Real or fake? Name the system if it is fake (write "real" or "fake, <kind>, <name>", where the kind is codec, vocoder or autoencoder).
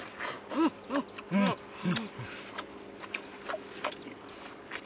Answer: real